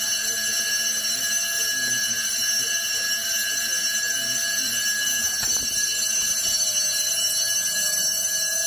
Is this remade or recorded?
recorded